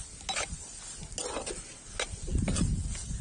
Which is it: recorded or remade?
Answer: recorded